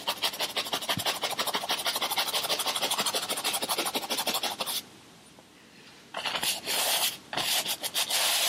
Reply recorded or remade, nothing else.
recorded